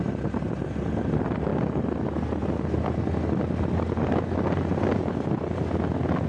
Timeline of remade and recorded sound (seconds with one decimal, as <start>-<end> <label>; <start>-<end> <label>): 0.0-6.3 recorded